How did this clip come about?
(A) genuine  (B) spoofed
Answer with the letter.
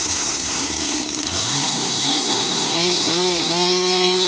B